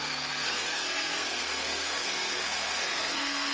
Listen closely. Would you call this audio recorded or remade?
remade